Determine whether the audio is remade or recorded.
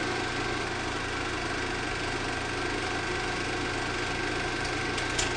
recorded